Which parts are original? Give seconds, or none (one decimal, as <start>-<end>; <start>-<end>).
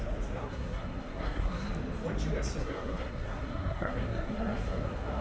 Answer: 0.0-0.4; 1.7-2.6